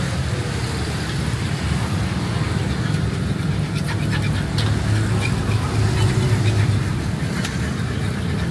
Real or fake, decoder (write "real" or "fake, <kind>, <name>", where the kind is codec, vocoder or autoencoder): real